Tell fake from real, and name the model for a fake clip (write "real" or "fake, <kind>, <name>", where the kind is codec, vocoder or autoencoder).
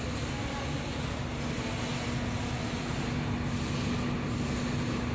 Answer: real